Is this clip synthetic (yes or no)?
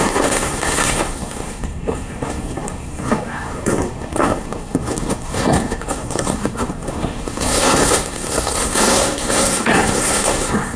yes